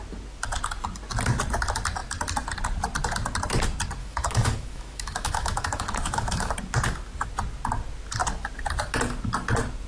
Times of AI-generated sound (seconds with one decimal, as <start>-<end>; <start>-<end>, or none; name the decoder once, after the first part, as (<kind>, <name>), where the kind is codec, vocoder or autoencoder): 4.0-6.5 (autoencoder, DAC-VAE)